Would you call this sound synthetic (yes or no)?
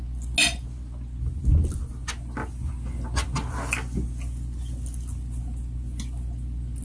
no